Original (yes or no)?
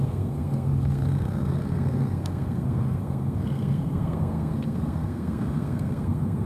no